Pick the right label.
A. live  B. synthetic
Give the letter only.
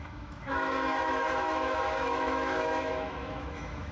B